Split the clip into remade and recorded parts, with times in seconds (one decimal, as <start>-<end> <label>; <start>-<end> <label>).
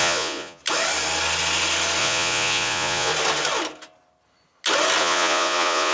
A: 0.0-0.6 remade; 0.6-2.0 recorded; 2.0-3.1 remade; 3.1-5.0 recorded; 5.0-5.9 remade